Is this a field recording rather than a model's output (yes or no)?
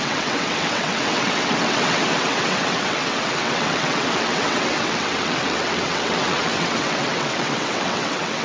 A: no